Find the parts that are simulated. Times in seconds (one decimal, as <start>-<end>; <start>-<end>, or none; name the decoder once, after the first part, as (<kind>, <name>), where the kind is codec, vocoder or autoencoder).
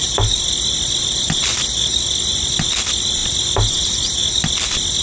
0.0-2.3 (vocoder, BigVGAN v2)